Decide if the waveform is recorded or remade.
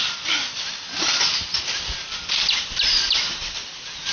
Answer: recorded